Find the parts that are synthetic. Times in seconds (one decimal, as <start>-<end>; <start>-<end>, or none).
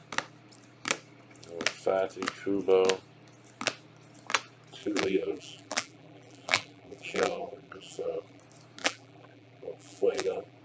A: 4.8-8.4; 8.8-10.6